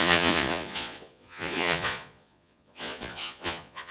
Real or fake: fake